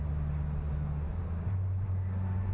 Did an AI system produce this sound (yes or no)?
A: no